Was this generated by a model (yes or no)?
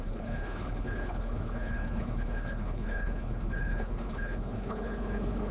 yes